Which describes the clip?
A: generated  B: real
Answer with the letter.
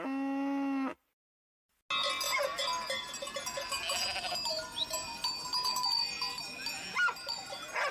B